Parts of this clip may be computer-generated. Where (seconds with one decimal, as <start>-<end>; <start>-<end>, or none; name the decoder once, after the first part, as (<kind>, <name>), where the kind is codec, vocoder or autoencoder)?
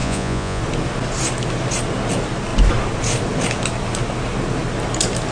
0.0-0.6 (vocoder, Vocos)